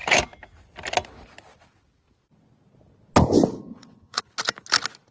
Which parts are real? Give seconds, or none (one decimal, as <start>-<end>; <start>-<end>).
0.0-3.7; 4.2-5.1